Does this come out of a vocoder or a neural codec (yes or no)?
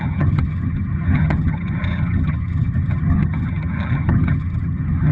yes